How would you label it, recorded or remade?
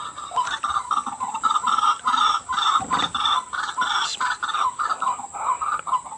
recorded